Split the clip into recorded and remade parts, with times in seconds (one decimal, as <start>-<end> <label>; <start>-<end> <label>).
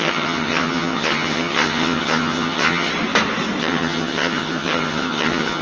0.0-2.9 remade; 2.9-3.6 recorded; 3.6-5.6 remade